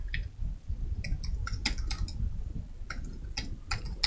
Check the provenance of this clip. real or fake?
real